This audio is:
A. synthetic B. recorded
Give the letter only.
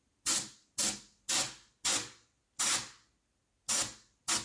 B